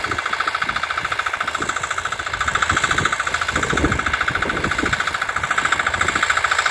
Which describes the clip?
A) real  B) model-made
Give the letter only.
A